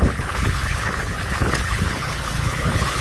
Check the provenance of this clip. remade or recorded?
remade